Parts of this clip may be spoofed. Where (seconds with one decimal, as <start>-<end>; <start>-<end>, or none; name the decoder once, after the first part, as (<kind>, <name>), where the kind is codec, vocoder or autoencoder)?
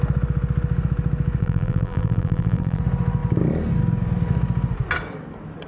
1.4-2.8 (vocoder, BigVGAN v2)